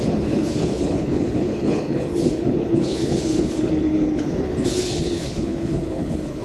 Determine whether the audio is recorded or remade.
remade